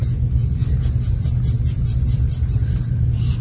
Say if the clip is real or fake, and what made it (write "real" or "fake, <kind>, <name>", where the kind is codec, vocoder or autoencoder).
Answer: real